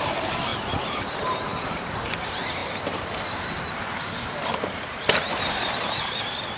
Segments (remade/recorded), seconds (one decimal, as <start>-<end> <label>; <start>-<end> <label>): 0.0-6.6 remade